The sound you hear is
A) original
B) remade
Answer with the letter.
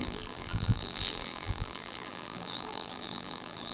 B